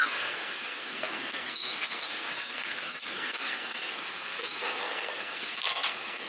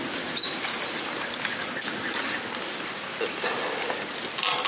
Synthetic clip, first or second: first